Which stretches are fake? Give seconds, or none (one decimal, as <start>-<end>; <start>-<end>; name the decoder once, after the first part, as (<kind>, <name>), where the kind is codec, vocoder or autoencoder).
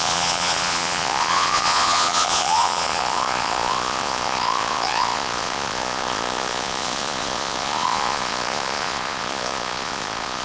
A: 0.0-10.4 (vocoder, Vocos)